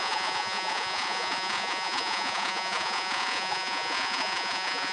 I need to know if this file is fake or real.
fake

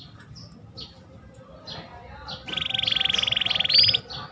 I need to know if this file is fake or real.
real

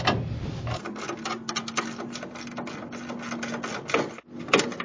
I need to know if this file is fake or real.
real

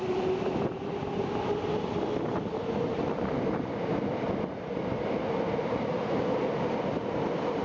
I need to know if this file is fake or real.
real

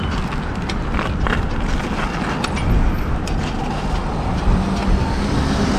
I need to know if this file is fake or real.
real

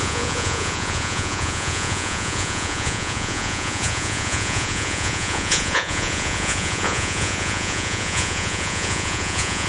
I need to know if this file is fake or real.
fake